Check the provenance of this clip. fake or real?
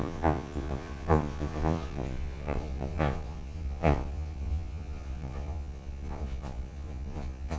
fake